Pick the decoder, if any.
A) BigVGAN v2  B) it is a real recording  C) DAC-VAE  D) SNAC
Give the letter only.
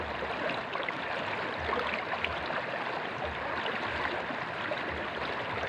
B